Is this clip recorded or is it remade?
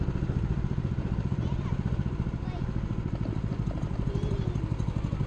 recorded